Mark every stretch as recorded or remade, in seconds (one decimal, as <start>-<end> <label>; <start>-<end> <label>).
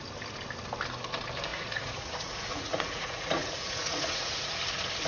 0.0-1.5 recorded; 1.5-4.6 remade; 4.6-5.1 recorded